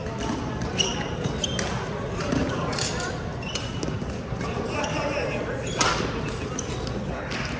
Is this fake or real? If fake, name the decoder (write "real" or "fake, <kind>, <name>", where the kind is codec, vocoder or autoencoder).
real